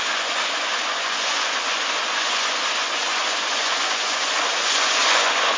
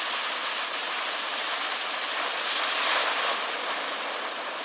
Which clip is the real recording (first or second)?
second